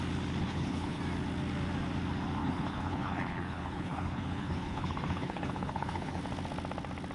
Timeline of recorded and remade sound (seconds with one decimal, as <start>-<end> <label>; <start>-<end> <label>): 0.0-0.4 recorded; 0.4-1.0 remade; 1.0-2.4 recorded; 2.4-6.2 remade; 6.2-7.1 recorded